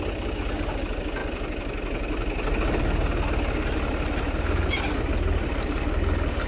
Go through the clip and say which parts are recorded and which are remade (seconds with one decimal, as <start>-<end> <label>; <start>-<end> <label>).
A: 0.0-6.5 recorded

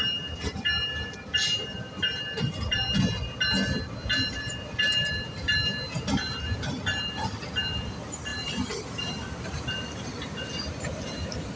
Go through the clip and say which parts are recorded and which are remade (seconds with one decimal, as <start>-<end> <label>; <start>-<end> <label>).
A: 0.0-11.6 recorded

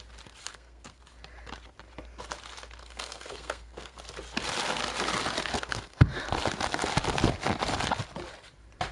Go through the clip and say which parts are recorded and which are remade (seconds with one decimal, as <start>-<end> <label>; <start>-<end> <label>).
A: 0.0-0.5 recorded; 0.5-1.0 remade; 1.0-2.8 recorded; 2.8-4.0 remade; 4.0-5.5 recorded; 5.5-6.2 remade; 6.2-8.9 recorded

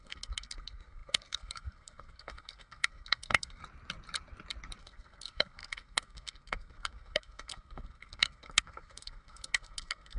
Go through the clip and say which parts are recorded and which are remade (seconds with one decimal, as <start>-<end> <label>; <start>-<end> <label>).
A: 0.0-3.6 remade; 3.6-4.8 recorded; 4.8-10.2 remade

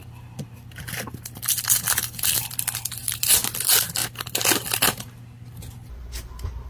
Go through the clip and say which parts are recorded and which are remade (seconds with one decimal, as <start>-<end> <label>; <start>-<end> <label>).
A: 0.0-3.1 remade; 3.1-6.7 recorded

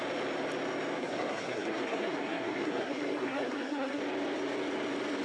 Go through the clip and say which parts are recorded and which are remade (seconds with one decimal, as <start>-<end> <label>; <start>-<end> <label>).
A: 0.0-1.0 recorded; 1.0-4.0 remade; 4.0-5.2 recorded

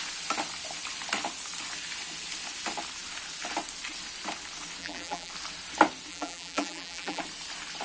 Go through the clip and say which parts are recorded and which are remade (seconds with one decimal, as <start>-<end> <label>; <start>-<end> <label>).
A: 0.0-4.8 recorded; 4.8-5.3 remade; 5.3-6.1 recorded; 6.1-7.2 remade; 7.2-7.8 recorded

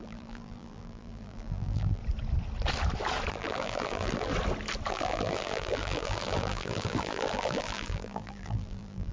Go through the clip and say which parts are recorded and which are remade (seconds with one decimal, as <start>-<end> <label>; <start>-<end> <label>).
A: 0.0-2.0 remade; 2.0-3.3 recorded; 3.3-4.3 remade; 4.3-4.9 recorded; 4.9-9.1 remade